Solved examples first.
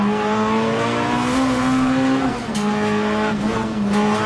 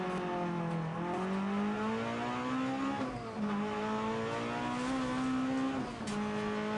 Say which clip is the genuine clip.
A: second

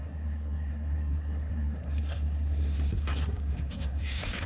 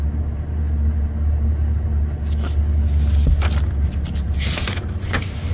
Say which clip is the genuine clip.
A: second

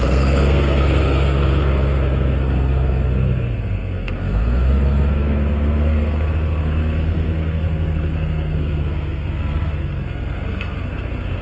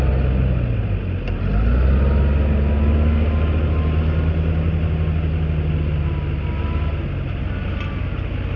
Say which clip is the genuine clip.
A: second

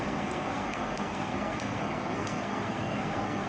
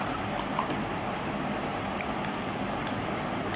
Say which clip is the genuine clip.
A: second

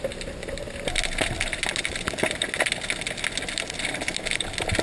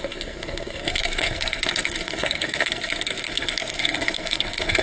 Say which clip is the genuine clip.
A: first